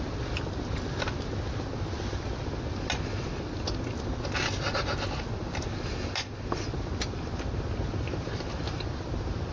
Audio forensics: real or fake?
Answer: real